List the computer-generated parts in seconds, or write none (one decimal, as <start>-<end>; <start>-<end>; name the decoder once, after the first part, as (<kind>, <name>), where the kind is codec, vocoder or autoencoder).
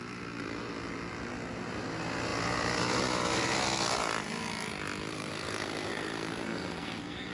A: 5.1-7.3 (codec, SNAC)